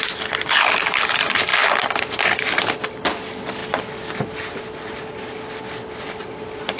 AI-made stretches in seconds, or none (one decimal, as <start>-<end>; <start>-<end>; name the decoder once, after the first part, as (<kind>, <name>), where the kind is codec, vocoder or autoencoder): 0.0-1.5 (vocoder, BigVGAN v2); 2.7-3.6; 5.6-6.8